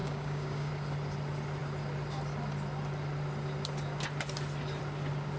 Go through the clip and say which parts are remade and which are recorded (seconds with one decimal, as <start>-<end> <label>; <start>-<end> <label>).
0.0-0.7 remade; 0.7-5.4 recorded